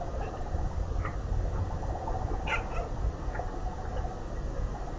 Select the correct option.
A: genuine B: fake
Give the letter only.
A